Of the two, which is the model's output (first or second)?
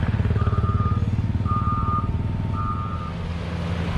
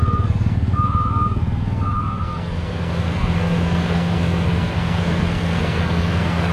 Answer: second